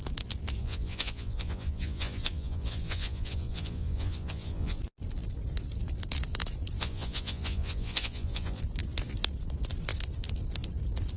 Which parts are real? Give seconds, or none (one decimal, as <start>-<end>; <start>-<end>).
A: 0.0-0.6; 4.8-6.8; 8.6-11.2